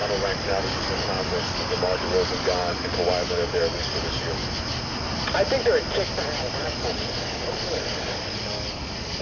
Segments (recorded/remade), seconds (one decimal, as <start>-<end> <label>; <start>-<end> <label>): 0.0-4.4 remade; 4.4-6.6 recorded; 6.6-9.2 remade